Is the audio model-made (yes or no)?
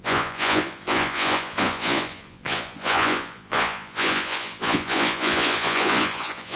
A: yes